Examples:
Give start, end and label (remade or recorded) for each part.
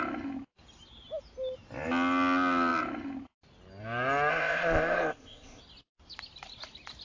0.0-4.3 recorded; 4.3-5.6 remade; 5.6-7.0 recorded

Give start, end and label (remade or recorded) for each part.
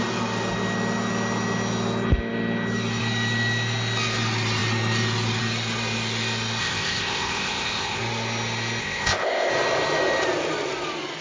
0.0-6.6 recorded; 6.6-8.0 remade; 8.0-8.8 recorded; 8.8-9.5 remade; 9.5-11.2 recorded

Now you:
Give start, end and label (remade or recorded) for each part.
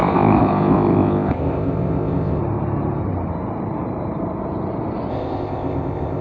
0.0-2.4 remade; 2.4-5.1 recorded; 5.1-6.2 remade